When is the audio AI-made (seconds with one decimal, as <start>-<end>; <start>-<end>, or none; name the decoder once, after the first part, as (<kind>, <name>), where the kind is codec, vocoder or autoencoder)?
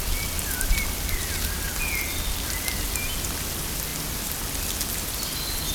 none